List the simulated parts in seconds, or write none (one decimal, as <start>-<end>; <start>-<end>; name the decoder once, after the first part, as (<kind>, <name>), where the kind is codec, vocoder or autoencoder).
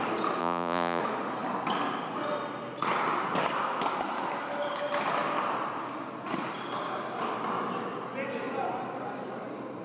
0.4-1.0 (vocoder, Vocos)